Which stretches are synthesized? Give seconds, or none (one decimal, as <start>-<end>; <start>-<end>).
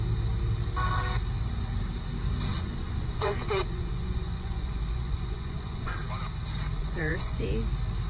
2.5-5.9; 6.8-7.5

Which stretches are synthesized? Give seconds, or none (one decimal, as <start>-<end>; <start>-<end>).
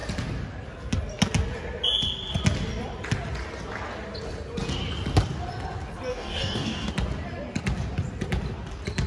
6.1-6.9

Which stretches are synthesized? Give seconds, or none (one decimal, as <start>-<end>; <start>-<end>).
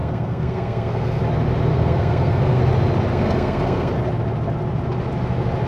0.0-1.2; 1.7-2.6; 3.1-3.9